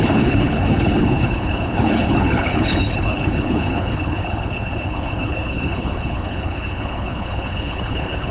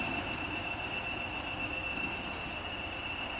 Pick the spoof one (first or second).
first